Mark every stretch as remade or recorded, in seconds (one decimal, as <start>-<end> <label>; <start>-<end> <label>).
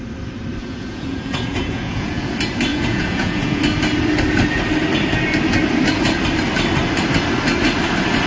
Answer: 0.0-0.6 recorded; 0.6-2.3 remade; 2.3-2.7 recorded; 2.7-3.6 remade; 3.6-8.3 recorded